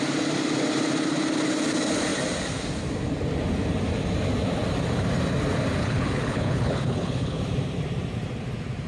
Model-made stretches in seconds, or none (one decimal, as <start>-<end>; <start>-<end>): 5.8-7.4